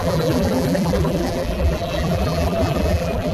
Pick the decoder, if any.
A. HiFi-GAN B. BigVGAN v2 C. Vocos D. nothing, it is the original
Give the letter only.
B